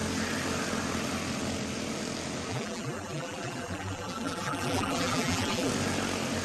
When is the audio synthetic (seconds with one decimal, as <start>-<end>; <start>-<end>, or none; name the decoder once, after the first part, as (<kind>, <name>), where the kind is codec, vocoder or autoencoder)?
2.5-5.7 (vocoder, BigVGAN v2)